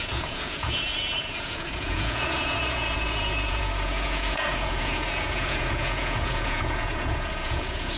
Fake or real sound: fake